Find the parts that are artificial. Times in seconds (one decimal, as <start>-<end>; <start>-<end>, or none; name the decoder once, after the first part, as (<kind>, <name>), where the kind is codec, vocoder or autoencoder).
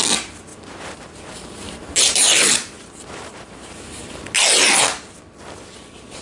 0.5-4.2 (vocoder, BigVGAN v2)